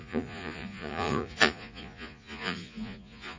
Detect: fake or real fake